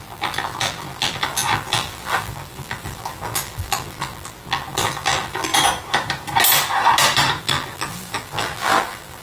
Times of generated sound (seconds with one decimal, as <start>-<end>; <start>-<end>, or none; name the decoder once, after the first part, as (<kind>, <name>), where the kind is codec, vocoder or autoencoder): 0.0-5.5 (vocoder, BigVGAN v2); 7.4-9.2